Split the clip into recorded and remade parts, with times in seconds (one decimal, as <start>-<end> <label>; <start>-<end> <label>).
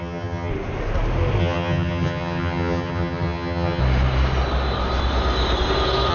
0.0-0.5 remade; 0.5-1.4 recorded; 1.4-3.8 remade; 3.8-6.1 recorded